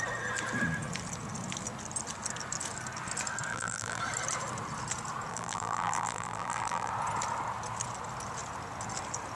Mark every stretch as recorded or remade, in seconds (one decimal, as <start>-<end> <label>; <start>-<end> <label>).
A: 0.0-3.5 recorded; 3.5-4.0 remade; 4.0-5.3 recorded; 5.3-6.9 remade; 6.9-9.4 recorded